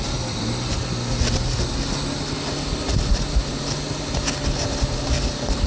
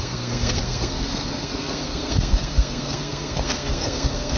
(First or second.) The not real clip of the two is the second